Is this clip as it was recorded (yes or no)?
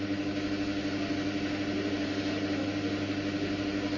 yes